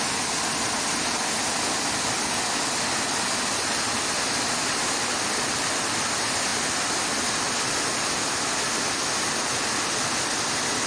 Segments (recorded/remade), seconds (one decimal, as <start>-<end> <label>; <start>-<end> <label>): 0.0-10.9 recorded